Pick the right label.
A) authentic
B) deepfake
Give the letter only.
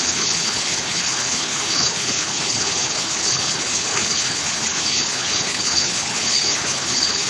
B